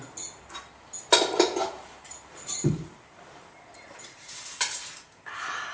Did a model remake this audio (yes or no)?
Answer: no